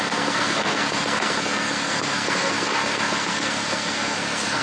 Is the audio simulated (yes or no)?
yes